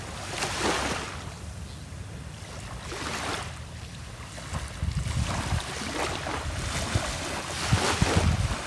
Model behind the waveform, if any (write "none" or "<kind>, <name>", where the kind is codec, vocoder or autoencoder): none